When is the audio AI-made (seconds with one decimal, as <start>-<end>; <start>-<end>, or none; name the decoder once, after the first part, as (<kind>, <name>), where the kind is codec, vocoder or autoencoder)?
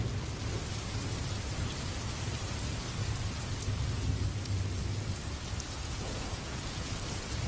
5.8-6.9 (vocoder, Vocos)